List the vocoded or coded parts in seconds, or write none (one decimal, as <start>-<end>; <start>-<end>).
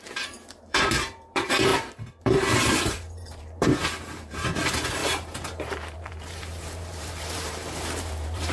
0.0-1.7; 2.2-8.5